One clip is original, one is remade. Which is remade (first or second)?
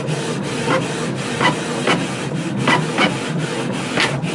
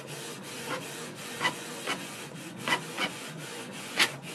second